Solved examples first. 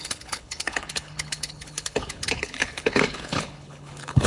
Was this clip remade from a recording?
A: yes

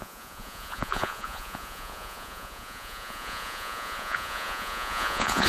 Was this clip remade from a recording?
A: yes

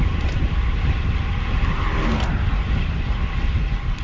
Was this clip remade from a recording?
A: no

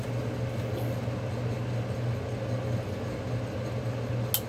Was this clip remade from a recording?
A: no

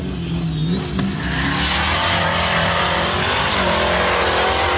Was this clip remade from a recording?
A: no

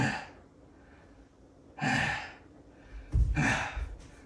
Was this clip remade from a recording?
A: no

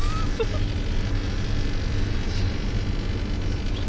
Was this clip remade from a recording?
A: no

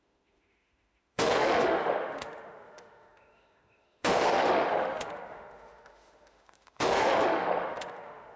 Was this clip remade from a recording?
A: yes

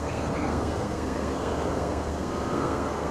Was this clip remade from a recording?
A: yes